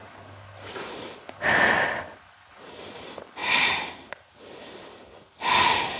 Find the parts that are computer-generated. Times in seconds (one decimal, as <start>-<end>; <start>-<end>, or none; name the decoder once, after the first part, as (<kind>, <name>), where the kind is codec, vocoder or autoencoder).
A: none